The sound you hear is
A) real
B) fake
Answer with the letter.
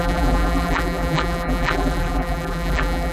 B